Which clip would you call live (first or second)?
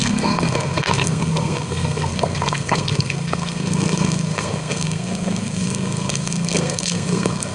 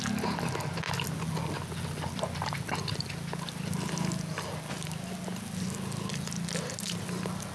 second